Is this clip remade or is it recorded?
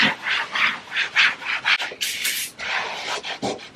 recorded